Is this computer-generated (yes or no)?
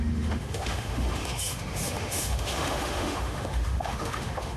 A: yes